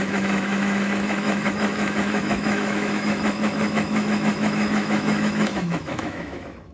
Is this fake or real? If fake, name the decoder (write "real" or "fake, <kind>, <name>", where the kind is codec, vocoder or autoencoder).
fake, autoencoder, DAC-VAE